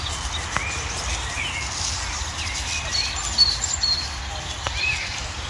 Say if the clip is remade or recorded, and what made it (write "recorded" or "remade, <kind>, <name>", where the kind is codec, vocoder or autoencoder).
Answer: recorded